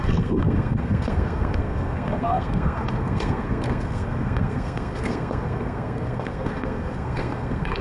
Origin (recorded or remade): remade